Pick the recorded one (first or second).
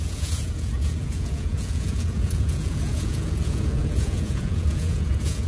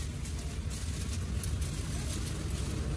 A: second